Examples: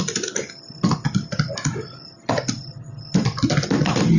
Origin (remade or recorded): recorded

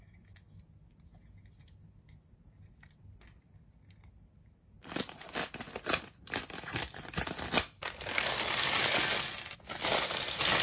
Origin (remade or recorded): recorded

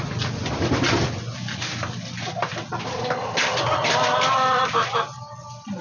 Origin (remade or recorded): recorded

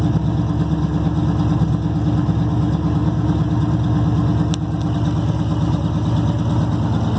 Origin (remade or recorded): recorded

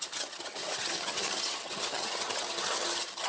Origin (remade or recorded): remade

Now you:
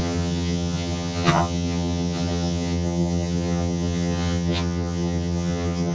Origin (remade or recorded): remade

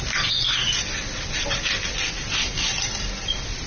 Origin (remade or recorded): recorded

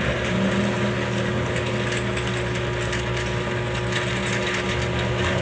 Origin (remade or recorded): recorded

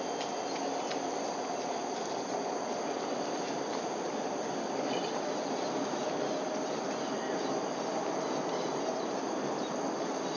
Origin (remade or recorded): recorded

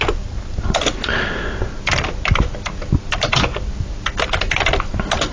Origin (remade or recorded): recorded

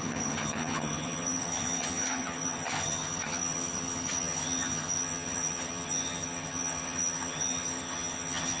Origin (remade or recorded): remade